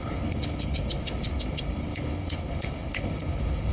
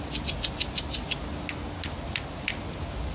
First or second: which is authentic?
second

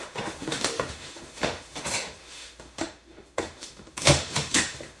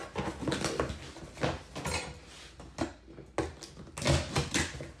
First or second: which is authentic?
second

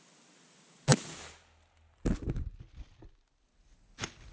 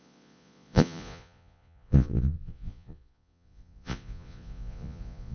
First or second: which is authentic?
first